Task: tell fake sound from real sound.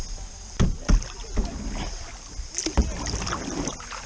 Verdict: real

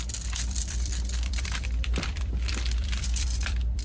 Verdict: fake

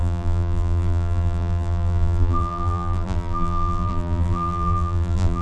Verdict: fake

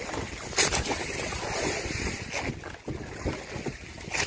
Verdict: real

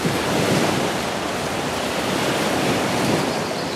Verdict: fake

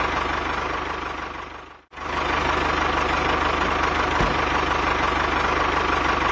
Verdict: real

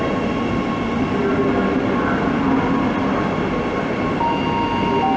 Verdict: real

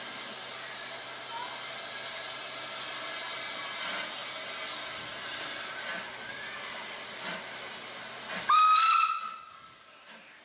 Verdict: real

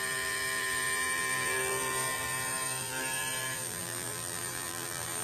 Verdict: fake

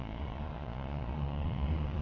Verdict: fake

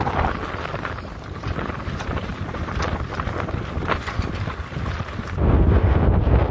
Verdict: real